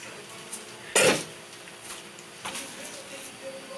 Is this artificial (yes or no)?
no